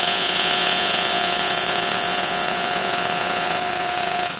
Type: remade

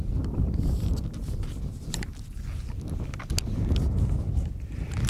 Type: recorded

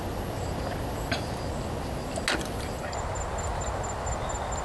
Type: recorded